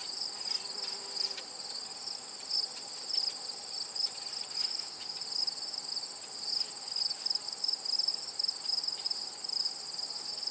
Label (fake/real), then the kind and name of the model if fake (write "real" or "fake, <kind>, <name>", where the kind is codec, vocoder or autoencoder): real